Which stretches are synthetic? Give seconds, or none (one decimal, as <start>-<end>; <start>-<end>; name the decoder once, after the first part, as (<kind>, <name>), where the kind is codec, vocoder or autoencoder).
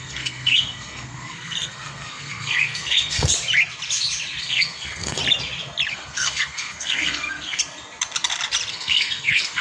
0.0-3.3 (codec, SNAC); 4.4-5.2; 5.9-7.6; 8.7-9.6